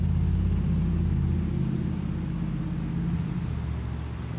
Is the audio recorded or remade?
recorded